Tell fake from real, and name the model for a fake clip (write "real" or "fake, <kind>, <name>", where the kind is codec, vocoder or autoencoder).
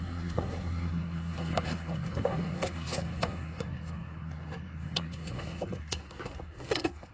fake, codec, SNAC